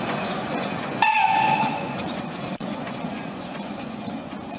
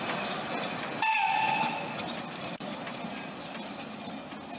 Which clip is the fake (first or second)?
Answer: first